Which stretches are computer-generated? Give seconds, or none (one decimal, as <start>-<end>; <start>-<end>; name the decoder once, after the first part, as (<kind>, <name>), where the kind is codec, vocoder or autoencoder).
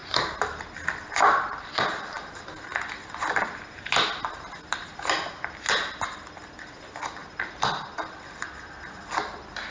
none